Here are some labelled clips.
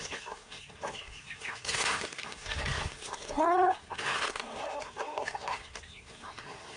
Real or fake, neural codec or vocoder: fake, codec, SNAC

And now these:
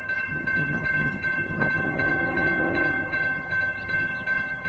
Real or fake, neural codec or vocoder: fake, vocoder, HiFi-GAN